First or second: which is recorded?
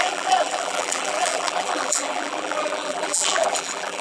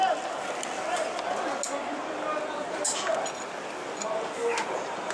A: second